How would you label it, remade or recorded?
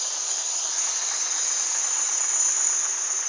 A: recorded